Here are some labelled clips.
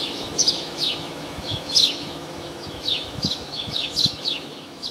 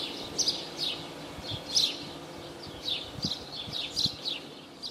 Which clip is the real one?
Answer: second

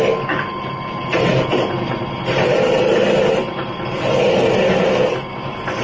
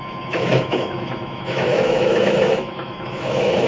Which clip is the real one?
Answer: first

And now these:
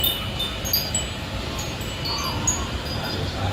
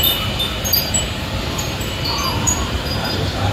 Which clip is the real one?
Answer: first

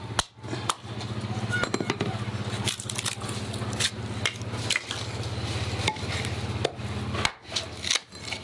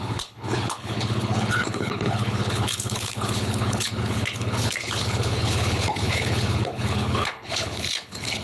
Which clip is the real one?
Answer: first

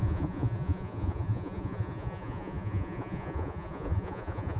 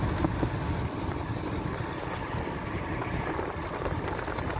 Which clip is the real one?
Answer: second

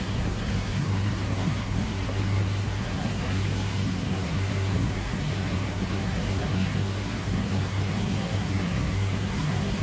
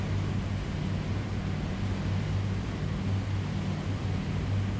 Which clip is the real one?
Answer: second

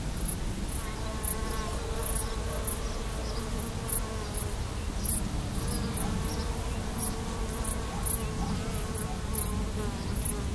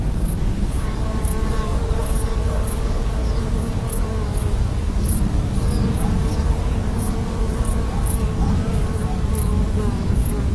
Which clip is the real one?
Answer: first